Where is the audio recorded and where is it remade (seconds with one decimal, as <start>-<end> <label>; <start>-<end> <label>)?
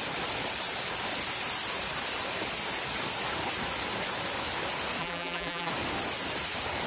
0.0-5.0 recorded; 5.0-5.7 remade; 5.7-6.9 recorded